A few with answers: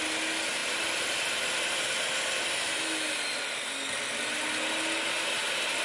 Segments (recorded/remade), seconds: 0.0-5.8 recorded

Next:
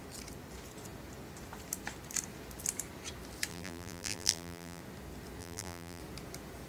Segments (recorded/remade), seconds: 0.0-3.5 recorded; 3.5-4.8 remade; 4.8-5.4 recorded; 5.4-6.0 remade; 6.0-6.7 recorded

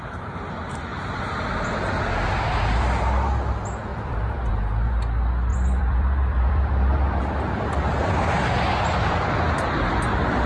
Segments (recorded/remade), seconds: 0.0-3.9 recorded; 3.9-4.5 remade; 4.5-5.5 recorded; 5.5-7.2 remade; 7.2-10.5 recorded

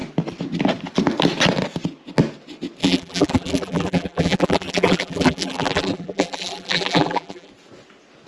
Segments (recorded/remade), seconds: 0.0-2.8 recorded; 2.8-7.5 remade; 7.5-8.3 recorded

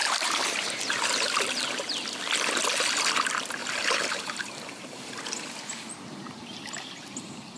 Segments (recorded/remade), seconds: 0.0-0.9 remade; 0.9-3.6 recorded; 3.6-7.6 remade